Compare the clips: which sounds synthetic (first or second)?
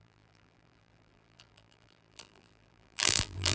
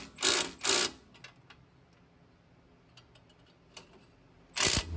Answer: first